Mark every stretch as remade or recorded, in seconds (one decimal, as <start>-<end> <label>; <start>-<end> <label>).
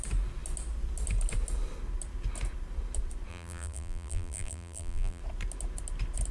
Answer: 0.0-3.3 recorded; 3.3-5.2 remade; 5.2-6.3 recorded